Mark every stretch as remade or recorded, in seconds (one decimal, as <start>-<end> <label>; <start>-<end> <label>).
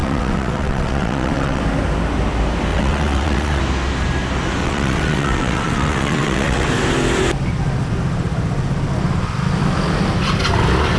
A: 0.0-1.6 remade; 1.6-2.7 recorded; 2.7-3.6 remade; 3.6-4.6 recorded; 4.6-6.7 remade; 6.7-11.0 recorded